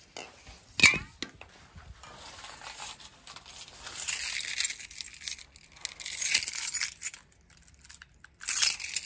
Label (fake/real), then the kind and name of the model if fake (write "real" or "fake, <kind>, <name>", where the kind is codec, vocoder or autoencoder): real